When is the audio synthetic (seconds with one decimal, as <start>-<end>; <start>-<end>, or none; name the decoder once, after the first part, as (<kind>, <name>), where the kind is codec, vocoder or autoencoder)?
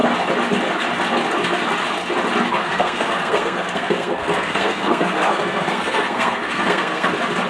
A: 2.6-7.1 (codec, SNAC)